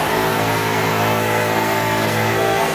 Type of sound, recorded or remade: remade